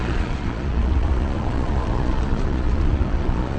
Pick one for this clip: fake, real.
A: fake